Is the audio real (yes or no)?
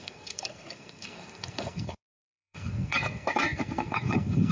no